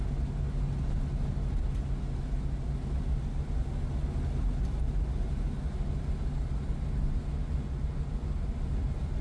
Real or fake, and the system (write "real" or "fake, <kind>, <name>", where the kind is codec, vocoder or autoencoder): real